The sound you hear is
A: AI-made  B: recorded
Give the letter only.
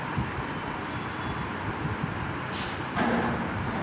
B